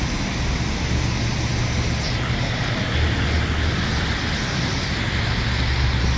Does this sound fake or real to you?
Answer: real